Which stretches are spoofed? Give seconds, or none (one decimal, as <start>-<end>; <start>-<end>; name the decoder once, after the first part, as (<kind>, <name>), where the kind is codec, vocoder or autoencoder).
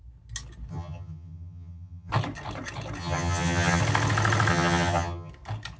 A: 0.7-2.1 (vocoder, HiFi-GAN); 3.0-3.8; 4.5-5.3